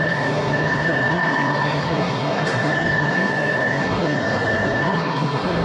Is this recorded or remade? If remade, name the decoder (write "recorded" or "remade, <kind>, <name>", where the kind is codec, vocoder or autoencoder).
remade, codec, SNAC